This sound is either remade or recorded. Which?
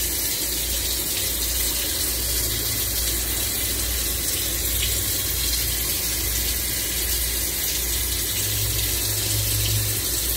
recorded